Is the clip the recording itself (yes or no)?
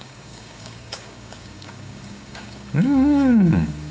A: no